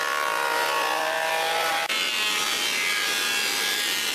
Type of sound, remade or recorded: recorded